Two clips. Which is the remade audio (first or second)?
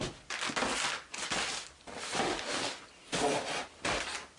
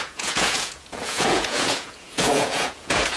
second